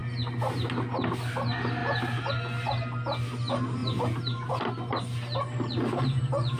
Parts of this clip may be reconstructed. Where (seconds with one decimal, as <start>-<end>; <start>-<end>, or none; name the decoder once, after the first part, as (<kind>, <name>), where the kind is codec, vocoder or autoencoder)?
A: none